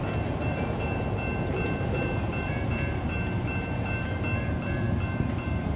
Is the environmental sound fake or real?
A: fake